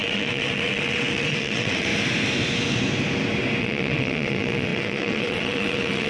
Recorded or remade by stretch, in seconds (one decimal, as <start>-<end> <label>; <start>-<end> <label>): 0.0-1.9 remade; 1.9-3.6 recorded; 3.6-6.1 remade